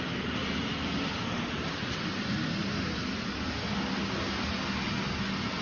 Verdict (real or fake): real